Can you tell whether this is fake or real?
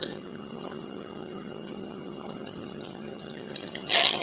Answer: fake